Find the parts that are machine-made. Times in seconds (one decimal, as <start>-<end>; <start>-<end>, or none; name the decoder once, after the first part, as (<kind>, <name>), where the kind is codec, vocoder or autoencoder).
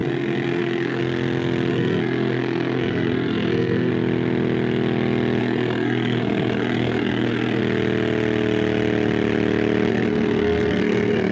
0.0-1.0 (codec, SNAC); 1.7-3.9; 5.4-7.6; 9.9-11.3